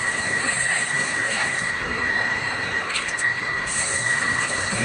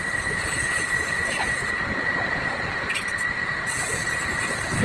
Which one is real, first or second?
second